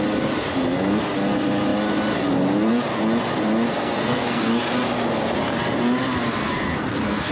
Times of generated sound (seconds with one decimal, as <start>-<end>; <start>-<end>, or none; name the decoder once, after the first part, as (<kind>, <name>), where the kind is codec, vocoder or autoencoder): 3.7-4.6 (codec, SNAC); 6.4-7.3